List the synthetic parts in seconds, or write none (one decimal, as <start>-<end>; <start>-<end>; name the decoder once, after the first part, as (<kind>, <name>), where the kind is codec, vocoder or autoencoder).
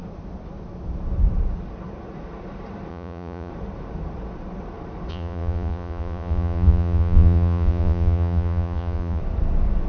2.9-3.5 (vocoder, Vocos); 5.1-9.2